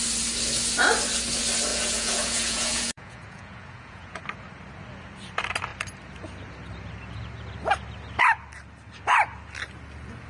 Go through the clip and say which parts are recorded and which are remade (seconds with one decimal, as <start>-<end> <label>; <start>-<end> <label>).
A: 0.0-1.7 recorded; 1.7-4.2 remade; 4.2-10.3 recorded